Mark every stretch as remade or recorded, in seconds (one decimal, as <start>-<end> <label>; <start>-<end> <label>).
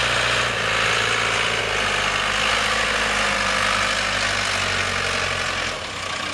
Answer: 0.0-6.3 recorded